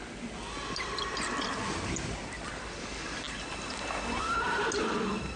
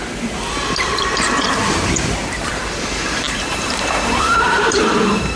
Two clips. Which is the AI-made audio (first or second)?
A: second